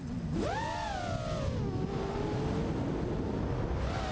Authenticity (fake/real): real